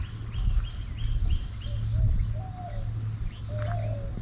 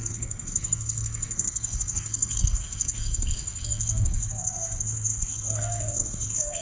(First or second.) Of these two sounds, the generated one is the second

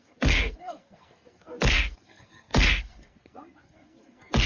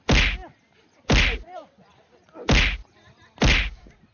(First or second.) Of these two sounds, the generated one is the first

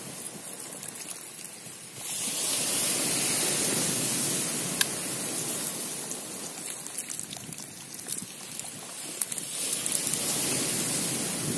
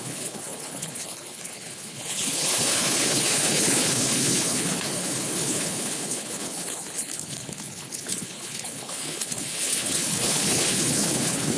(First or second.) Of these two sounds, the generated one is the second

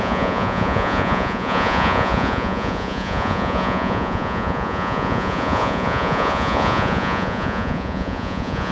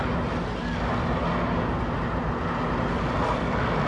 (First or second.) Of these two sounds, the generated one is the first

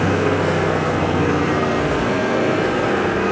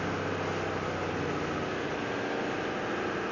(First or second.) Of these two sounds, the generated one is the first